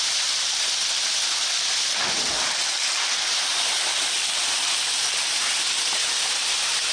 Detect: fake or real real